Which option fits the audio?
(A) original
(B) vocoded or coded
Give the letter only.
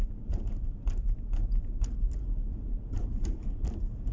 B